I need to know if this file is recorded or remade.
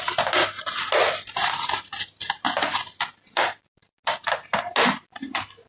recorded